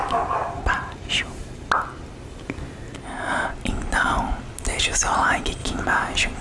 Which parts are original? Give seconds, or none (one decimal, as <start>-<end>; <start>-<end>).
0.0-0.4; 1.7-5.6